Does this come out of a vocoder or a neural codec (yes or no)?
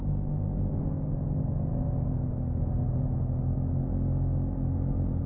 no